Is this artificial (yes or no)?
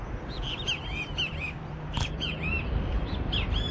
yes